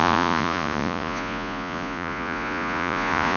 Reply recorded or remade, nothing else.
remade